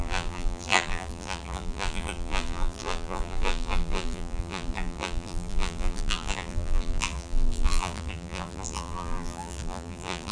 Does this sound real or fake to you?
fake